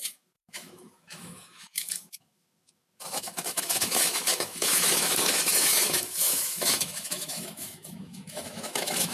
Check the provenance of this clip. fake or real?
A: fake